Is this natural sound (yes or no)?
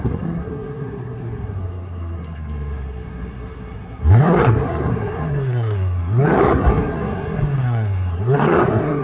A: no